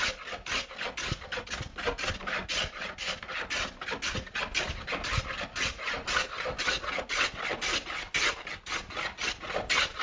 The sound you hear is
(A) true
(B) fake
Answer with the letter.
A